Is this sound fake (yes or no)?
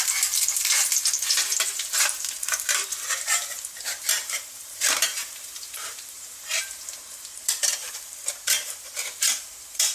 yes